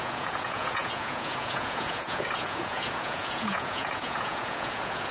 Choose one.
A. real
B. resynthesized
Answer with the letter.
B